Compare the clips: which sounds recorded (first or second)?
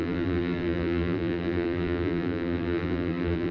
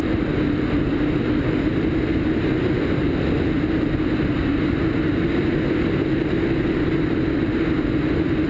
second